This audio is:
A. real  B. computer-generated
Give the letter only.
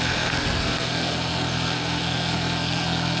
B